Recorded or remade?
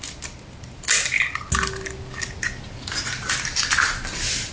recorded